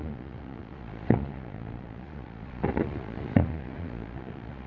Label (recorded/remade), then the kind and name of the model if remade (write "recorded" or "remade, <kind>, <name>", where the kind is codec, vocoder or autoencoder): remade, vocoder, Vocos